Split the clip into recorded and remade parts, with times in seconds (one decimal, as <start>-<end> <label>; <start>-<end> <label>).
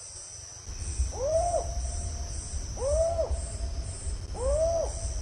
0.0-1.0 recorded; 1.0-4.1 remade; 4.1-5.2 recorded